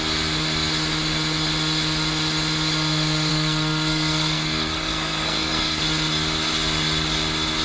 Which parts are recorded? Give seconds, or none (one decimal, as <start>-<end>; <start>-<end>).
0.0-3.3; 5.8-7.6